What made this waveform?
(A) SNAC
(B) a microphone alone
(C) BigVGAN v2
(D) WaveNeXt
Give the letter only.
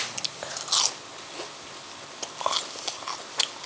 B